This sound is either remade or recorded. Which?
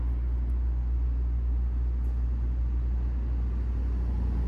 recorded